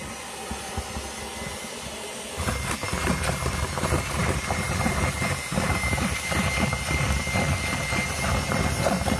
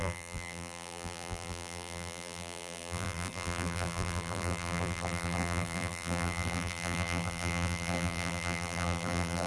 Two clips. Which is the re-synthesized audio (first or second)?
second